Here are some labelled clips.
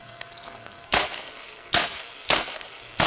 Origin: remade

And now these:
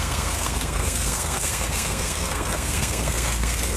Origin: remade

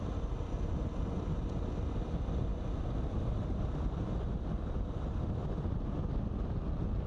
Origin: recorded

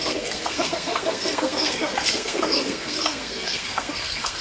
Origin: remade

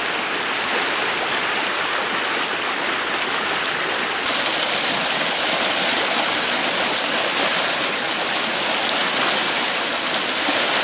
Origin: recorded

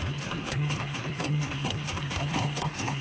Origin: remade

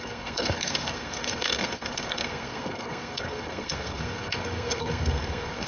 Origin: remade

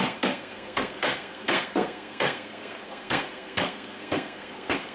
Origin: remade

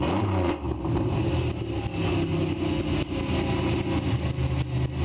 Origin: recorded